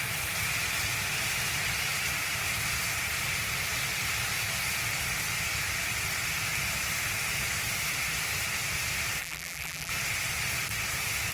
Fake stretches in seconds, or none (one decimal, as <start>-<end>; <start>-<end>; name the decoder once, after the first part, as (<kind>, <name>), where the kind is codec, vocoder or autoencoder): 9.2-9.9 (vocoder, BigVGAN v2)